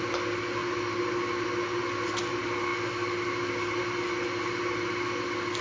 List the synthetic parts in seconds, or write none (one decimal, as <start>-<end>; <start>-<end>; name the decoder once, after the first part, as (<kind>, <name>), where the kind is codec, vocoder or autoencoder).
none